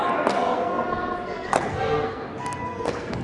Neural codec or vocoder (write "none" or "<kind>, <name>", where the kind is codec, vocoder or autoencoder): codec, SNAC